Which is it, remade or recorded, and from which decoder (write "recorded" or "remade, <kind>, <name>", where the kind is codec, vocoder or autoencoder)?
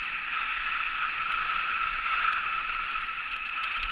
remade, vocoder, Vocos